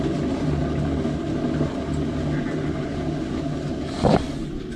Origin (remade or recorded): recorded